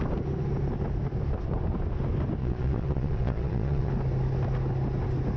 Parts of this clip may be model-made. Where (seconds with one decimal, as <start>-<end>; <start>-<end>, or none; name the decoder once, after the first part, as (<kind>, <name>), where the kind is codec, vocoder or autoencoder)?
2.4-3.9 (vocoder, Vocos)